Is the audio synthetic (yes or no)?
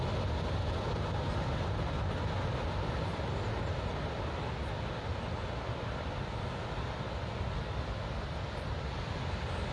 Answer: no